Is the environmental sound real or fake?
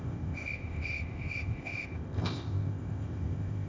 fake